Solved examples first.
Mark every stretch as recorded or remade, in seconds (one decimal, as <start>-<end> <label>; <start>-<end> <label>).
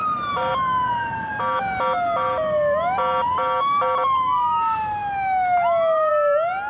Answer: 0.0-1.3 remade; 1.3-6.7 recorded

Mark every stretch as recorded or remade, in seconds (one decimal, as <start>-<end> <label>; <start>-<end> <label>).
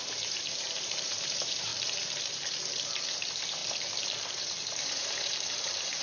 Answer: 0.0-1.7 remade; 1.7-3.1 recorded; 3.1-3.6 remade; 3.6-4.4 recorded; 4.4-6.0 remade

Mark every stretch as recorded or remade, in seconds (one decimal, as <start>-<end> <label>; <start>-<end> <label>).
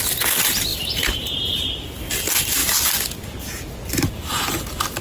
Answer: 0.0-0.7 recorded; 0.7-1.6 remade; 1.6-5.0 recorded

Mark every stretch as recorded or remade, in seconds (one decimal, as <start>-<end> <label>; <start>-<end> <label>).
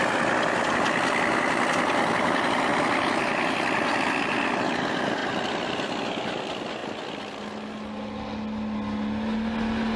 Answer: 0.0-10.0 recorded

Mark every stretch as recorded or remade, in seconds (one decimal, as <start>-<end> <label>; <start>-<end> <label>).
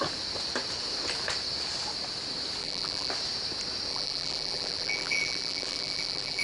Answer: 0.0-2.6 recorded; 2.6-3.1 remade; 3.1-3.9 recorded; 3.9-6.4 remade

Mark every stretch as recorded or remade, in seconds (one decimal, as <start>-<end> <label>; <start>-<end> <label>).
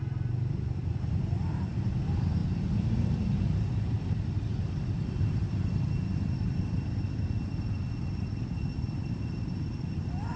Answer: 0.0-0.8 recorded; 0.8-2.4 remade; 2.4-3.5 recorded; 3.5-10.4 remade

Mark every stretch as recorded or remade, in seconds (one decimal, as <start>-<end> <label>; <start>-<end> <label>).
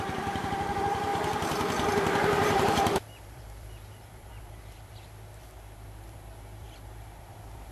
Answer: 0.0-7.7 remade